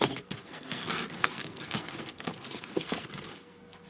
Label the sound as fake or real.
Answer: fake